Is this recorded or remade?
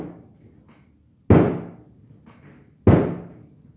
recorded